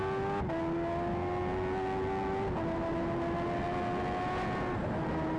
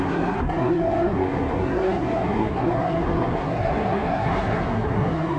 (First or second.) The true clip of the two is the first